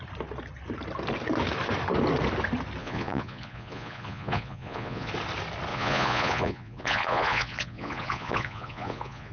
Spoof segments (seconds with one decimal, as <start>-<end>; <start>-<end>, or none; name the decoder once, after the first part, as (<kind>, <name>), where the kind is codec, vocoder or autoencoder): 2.8-5.1 (vocoder, Vocos); 5.7-9.3